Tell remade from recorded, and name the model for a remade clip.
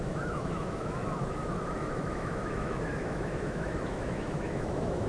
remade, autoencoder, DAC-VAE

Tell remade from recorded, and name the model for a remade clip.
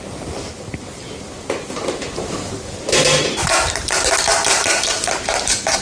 remade, vocoder, BigVGAN v2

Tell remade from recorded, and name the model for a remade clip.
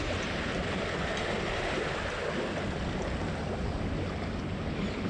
recorded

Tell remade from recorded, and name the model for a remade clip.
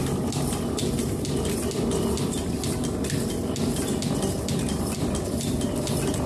recorded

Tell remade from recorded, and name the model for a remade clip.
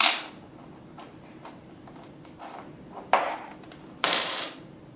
remade, vocoder, BigVGAN v2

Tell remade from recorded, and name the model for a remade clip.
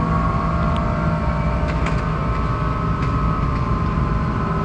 recorded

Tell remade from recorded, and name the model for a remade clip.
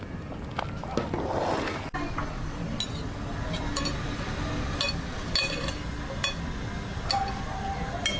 recorded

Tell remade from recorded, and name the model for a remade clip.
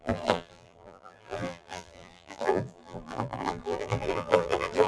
remade, vocoder, BigVGAN v2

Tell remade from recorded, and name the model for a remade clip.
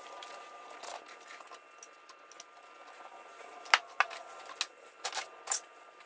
recorded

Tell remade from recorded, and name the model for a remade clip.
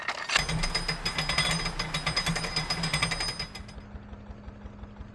recorded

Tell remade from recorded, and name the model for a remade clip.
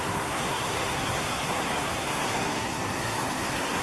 remade, codec, SNAC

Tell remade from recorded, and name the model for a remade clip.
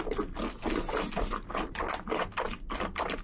recorded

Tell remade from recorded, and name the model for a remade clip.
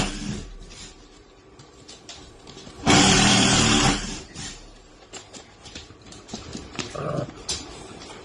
remade, vocoder, BigVGAN v2